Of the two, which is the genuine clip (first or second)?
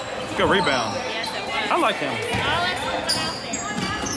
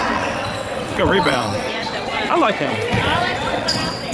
first